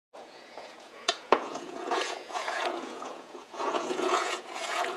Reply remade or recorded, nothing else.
remade